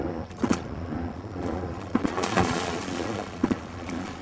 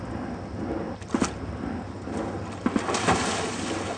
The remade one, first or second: first